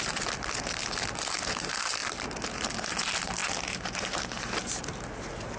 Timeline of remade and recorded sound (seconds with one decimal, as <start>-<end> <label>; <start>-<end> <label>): 0.0-5.6 recorded